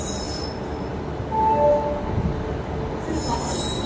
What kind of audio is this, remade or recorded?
recorded